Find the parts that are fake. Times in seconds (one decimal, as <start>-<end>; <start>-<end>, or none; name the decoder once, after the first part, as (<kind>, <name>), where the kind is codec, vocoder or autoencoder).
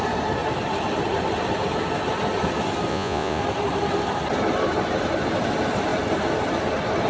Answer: 2.9-3.4 (vocoder, Vocos)